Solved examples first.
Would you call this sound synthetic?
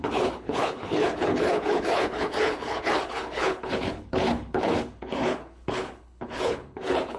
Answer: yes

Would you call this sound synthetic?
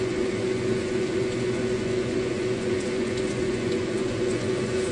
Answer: yes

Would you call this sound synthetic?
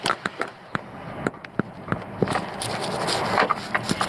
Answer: no